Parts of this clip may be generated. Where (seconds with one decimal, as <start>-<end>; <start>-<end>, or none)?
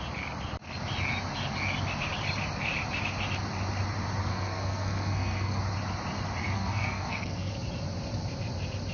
4.2-5.6; 6.4-7.5